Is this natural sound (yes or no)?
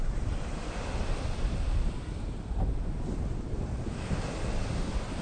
yes